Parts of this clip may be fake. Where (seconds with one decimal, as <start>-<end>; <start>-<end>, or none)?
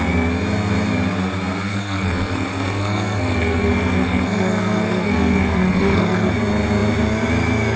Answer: 1.7-6.3